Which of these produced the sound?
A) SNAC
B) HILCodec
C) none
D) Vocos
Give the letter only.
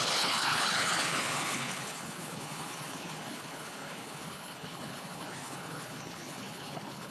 B